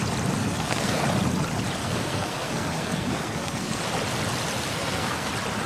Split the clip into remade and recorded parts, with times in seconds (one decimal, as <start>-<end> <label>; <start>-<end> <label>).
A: 0.0-0.4 recorded; 0.4-1.0 remade; 1.0-1.8 recorded; 1.8-3.8 remade; 3.8-4.7 recorded; 4.7-5.3 remade; 5.3-5.7 recorded